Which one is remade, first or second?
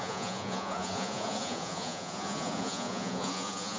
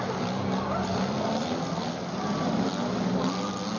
first